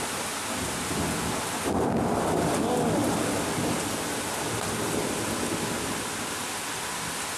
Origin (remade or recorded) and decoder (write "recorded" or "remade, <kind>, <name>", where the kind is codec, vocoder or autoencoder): recorded